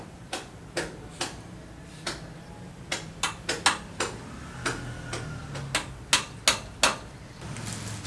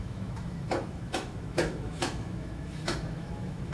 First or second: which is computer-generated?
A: second